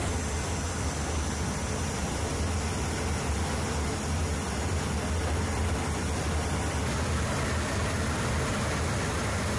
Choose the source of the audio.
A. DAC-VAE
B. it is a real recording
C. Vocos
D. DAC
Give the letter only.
B